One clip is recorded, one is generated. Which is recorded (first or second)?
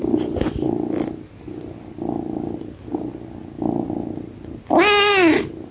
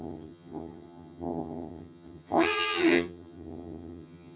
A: first